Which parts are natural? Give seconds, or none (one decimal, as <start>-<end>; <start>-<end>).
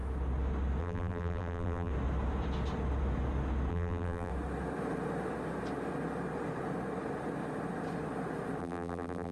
0.0-0.8; 1.9-3.7; 4.3-8.6